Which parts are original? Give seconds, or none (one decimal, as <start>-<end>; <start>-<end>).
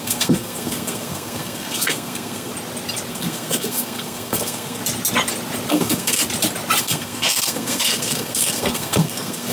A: 2.5-3.1; 4.8-5.7; 6.2-6.8